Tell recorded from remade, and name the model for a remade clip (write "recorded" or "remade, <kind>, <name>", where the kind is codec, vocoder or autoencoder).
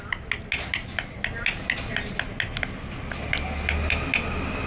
recorded